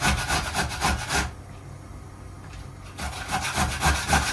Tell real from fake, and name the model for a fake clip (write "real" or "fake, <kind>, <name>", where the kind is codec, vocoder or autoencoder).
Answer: real